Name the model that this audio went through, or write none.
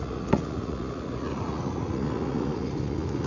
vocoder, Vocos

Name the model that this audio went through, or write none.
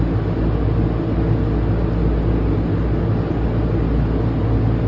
none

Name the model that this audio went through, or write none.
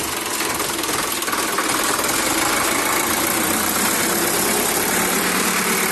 none